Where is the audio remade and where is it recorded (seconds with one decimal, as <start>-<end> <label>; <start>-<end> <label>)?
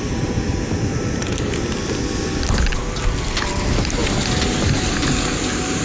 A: 0.0-5.8 recorded